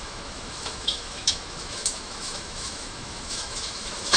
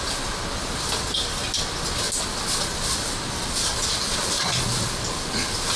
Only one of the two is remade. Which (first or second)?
first